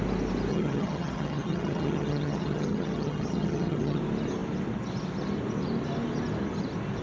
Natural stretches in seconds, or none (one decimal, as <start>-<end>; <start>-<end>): 0.0-0.5; 4.0-7.0